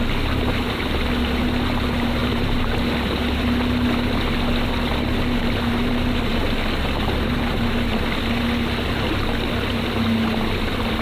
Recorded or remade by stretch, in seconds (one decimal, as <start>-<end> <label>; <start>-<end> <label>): 0.0-2.2 recorded; 2.2-2.7 remade; 2.7-11.0 recorded